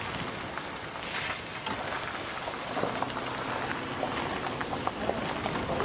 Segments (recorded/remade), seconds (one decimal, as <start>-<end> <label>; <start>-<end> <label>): 0.0-5.8 recorded